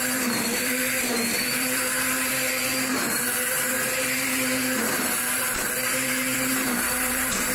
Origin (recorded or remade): remade